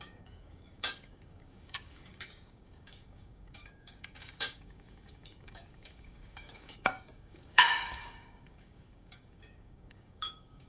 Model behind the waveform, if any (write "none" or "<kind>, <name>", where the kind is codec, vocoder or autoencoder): codec, DAC